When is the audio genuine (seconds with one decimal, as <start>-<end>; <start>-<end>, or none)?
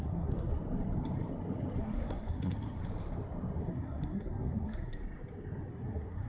0.5-1.8; 2.8-3.6; 5.0-5.7